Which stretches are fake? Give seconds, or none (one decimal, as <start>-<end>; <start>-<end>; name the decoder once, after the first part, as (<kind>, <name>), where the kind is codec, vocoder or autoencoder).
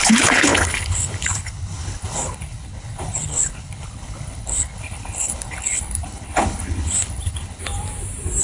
0.0-7.6 (codec, HILCodec)